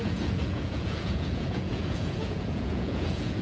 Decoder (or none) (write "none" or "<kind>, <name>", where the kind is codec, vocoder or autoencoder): vocoder, Vocos